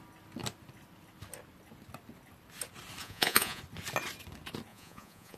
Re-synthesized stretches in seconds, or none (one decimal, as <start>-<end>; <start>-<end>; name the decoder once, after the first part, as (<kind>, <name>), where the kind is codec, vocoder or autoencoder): 3.0-3.6 (vocoder, Vocos); 4.7-5.4